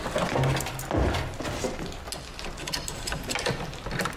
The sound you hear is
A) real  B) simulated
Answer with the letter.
A